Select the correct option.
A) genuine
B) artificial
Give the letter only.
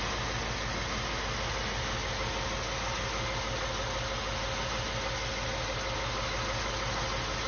A